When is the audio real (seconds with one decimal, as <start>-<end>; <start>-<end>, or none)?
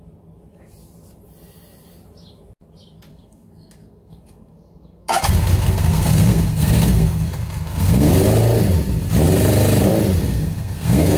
0.0-3.1; 8.1-10.2